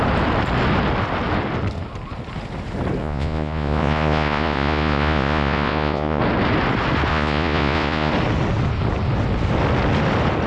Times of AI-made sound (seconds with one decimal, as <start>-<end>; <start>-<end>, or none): 3.0-6.2; 7.1-8.1